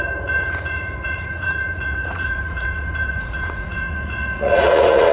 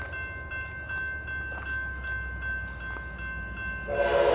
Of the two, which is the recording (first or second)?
second